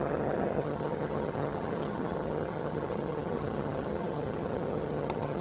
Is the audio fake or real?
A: fake